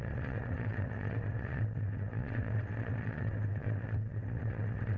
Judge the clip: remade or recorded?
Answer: remade